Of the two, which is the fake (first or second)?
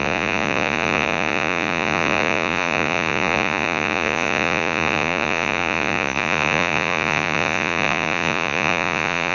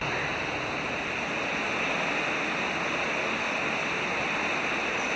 first